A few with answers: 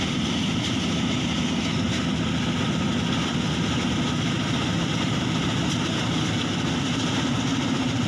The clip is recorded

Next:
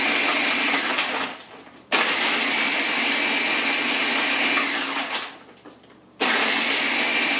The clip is recorded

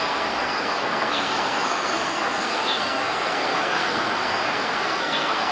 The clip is remade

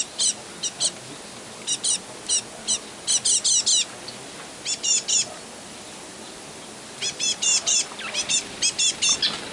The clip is recorded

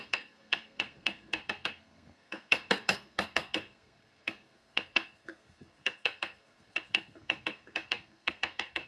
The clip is remade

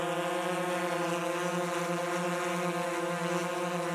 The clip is recorded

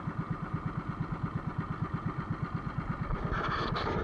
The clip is recorded